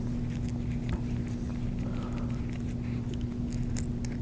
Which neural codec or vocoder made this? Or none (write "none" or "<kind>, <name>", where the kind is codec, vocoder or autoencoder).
none